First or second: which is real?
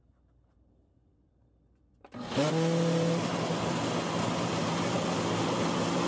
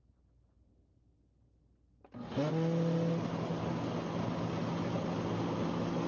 second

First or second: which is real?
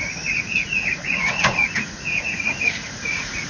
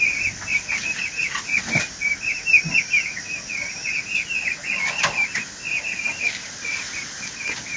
second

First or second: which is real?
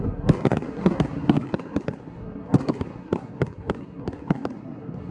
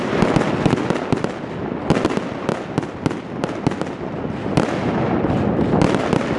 second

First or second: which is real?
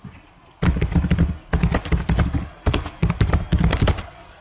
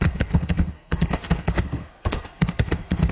first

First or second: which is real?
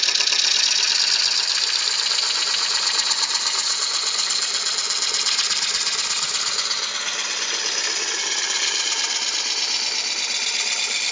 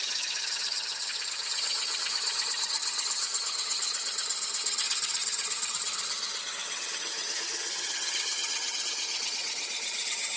first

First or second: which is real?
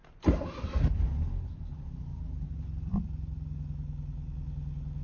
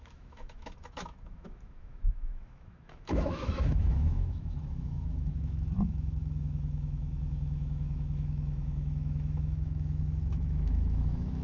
first